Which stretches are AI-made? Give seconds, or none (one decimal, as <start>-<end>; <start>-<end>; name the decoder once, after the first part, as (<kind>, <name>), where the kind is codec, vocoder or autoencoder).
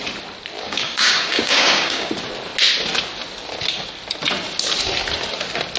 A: 0.6-2.1 (codec, DAC)